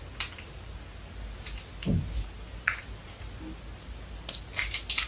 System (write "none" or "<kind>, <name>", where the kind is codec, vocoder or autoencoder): none